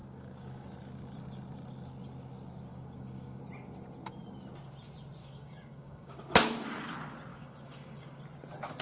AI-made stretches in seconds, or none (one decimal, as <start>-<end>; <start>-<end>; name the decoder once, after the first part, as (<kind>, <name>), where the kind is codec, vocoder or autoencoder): 0.0-0.7 (codec, DAC); 2.7-3.4; 5.2-6.2; 7.3-8.2